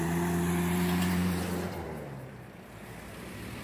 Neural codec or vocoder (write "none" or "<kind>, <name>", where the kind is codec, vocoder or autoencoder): vocoder, BigVGAN v2